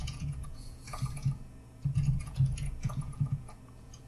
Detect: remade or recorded remade